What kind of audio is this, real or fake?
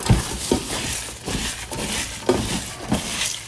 real